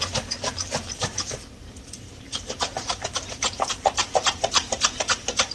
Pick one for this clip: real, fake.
fake